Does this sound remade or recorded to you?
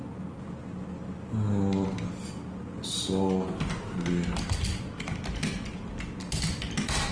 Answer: recorded